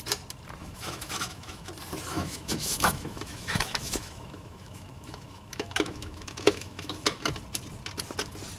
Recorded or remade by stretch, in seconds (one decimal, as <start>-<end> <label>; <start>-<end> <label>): 0.0-0.6 recorded; 0.6-1.7 remade; 1.7-2.1 recorded; 2.1-7.3 remade; 7.3-8.6 recorded